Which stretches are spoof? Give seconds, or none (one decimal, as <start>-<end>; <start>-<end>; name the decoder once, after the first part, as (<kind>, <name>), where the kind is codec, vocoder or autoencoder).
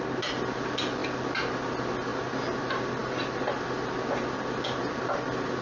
none